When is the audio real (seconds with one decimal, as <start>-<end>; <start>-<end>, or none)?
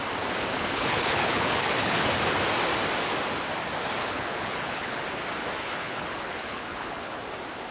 0.0-0.5; 2.1-4.0; 5.0-5.6; 7.2-7.7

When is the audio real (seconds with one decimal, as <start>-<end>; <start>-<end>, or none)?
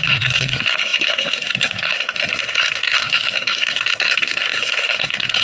none